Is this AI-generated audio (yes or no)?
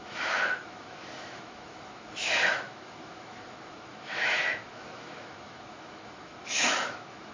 yes